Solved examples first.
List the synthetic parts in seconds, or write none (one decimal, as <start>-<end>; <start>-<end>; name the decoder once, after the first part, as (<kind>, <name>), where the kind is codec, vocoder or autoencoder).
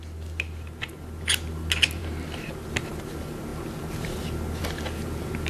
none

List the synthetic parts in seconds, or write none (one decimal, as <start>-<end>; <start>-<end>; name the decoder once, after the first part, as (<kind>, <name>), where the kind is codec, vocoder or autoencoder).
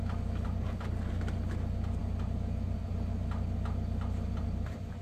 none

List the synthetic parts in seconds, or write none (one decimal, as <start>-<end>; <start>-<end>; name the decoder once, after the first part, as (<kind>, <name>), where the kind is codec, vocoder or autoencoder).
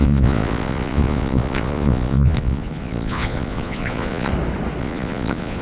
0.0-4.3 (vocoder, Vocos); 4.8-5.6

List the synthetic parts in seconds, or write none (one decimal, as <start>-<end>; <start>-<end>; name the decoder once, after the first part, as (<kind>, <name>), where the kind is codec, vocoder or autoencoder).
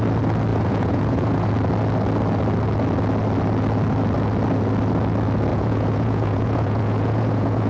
0.5-1.5 (vocoder, Vocos); 5.5-7.7